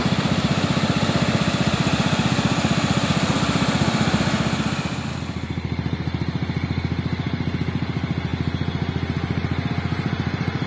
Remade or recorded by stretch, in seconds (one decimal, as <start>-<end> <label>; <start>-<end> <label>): 0.0-10.7 recorded